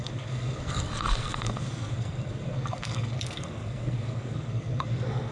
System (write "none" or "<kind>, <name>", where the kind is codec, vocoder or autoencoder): codec, SNAC